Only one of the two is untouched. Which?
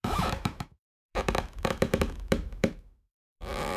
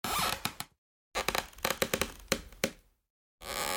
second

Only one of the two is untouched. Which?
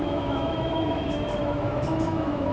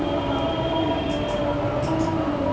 second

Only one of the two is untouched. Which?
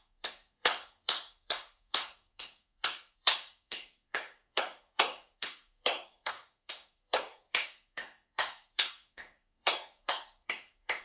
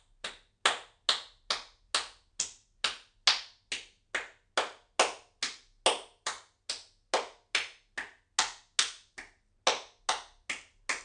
second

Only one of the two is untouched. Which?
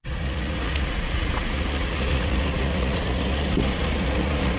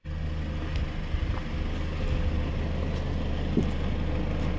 second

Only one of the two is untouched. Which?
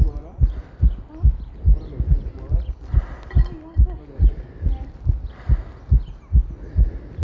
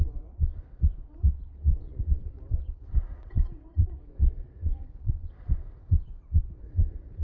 first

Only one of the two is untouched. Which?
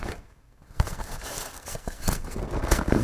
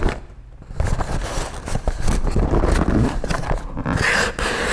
second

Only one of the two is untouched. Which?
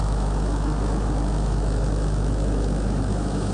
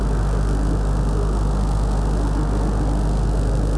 second